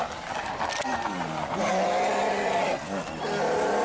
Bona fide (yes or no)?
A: yes